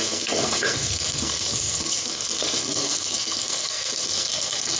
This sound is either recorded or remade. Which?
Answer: remade